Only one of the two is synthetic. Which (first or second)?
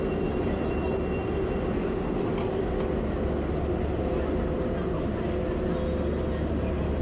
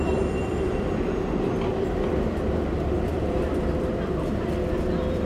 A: second